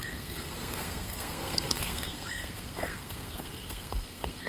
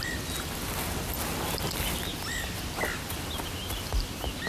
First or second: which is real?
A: second